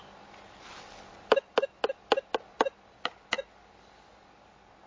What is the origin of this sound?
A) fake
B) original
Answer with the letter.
B